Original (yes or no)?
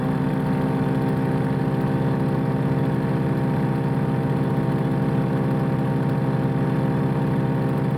yes